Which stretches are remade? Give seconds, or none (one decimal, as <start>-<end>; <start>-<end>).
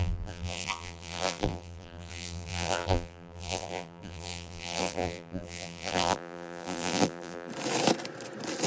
0.0-7.5